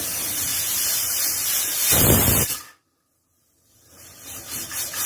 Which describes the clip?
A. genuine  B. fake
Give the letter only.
A